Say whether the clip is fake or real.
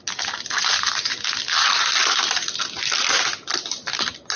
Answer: real